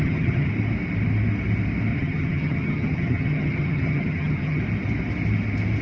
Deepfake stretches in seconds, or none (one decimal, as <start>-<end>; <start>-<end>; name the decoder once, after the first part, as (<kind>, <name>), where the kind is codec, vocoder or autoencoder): 0.0-0.5 (vocoder, HiFi-GAN); 1.9-4.6